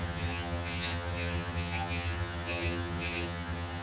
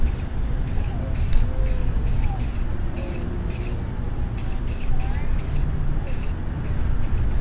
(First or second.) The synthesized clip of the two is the first